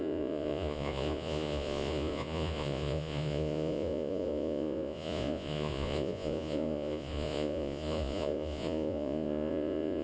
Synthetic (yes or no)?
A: yes